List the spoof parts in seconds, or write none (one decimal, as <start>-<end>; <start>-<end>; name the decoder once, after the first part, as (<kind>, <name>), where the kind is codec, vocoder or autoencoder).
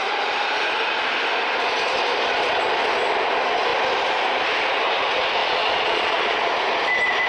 5.4-6.5 (vocoder, Vocos)